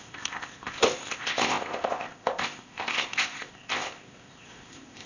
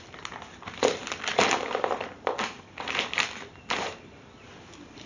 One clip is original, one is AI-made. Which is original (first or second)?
second